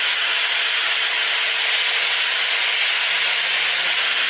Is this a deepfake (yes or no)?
no